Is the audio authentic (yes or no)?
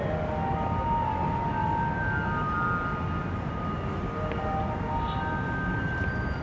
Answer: yes